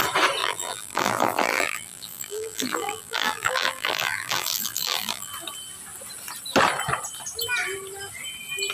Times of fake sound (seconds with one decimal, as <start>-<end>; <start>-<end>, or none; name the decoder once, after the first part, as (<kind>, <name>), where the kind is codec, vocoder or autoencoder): 0.4-5.3 (vocoder, BigVGAN v2)